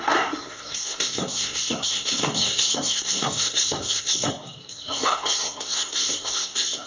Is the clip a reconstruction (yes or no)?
yes